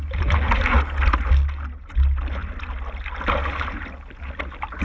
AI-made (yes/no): no